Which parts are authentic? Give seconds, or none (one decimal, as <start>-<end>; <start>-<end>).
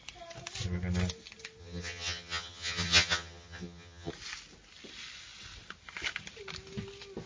0.0-1.6; 4.1-7.3